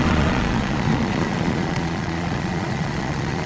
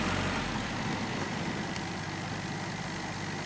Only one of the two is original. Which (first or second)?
second